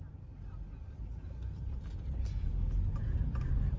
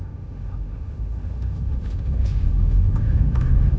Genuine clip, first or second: first